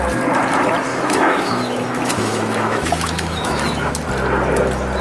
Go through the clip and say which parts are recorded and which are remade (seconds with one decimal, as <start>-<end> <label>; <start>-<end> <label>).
0.0-0.9 recorded; 0.9-3.9 remade; 3.9-5.0 recorded